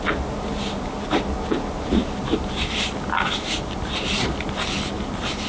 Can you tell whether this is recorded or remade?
recorded